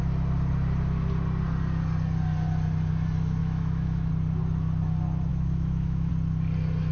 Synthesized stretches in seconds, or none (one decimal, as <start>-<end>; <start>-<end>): 3.4-4.1; 5.3-6.1